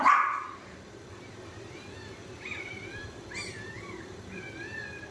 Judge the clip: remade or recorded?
remade